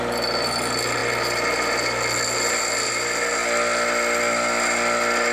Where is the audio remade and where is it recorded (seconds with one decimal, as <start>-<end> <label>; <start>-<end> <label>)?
0.0-5.3 recorded